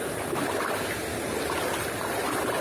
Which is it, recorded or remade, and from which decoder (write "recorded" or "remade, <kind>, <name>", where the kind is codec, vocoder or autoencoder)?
recorded